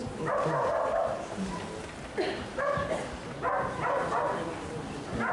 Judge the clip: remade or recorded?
recorded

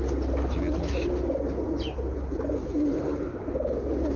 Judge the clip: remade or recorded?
recorded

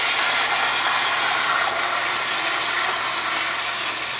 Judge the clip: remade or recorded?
recorded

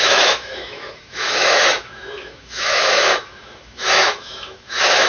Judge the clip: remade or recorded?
remade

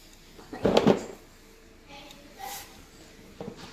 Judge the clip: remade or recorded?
recorded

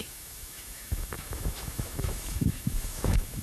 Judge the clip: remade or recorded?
remade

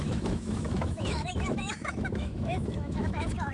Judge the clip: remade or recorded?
remade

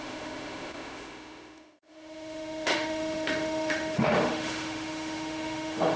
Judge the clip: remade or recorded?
remade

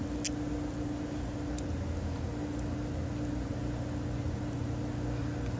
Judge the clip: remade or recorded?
recorded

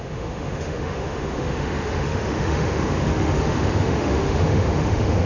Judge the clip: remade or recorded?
remade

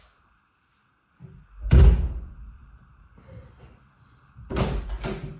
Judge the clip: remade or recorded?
recorded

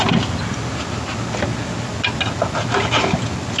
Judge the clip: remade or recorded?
recorded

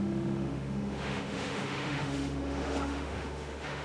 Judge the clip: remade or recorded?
remade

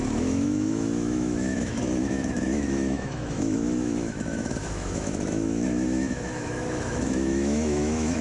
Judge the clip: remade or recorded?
remade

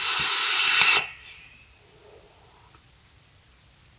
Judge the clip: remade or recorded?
recorded